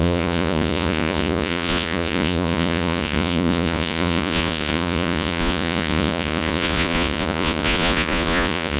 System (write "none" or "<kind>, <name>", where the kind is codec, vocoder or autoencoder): vocoder, Vocos